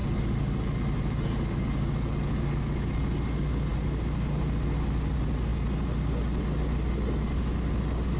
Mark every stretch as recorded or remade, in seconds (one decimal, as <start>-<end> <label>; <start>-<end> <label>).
0.0-8.2 recorded